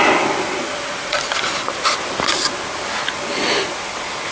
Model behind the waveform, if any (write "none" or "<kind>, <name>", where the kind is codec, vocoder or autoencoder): none